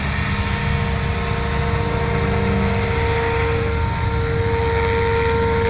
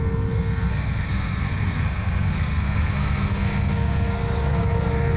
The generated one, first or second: second